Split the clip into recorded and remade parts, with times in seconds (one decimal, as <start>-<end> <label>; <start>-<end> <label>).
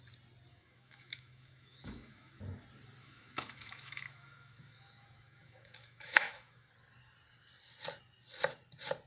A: 0.0-0.5 recorded; 0.5-2.4 remade; 2.4-3.0 recorded; 3.0-6.7 remade; 6.7-9.1 recorded